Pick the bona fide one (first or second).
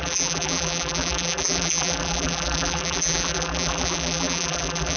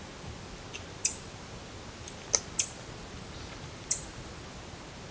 second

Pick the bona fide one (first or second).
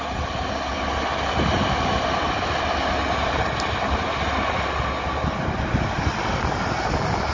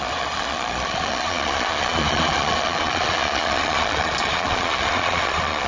first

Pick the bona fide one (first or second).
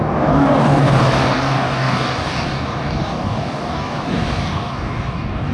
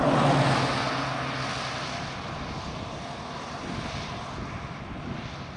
second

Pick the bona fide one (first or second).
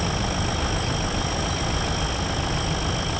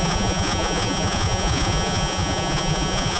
first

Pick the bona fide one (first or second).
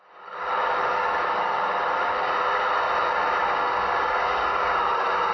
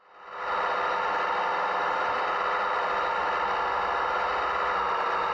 second